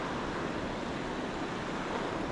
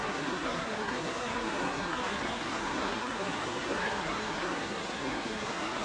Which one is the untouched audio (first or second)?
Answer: first